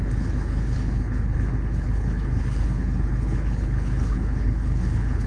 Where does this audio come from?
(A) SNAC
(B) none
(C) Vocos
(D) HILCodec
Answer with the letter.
D